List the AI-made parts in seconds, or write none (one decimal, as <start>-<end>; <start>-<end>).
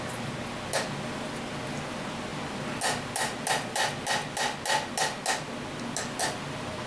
none